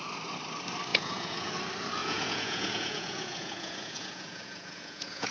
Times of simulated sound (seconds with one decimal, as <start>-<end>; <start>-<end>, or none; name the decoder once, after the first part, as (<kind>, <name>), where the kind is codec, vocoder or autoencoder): 0.9-1.5 (vocoder, Vocos); 2.0-5.3